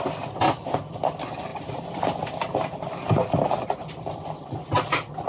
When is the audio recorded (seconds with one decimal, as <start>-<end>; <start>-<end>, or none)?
0.0-1.5; 4.6-5.3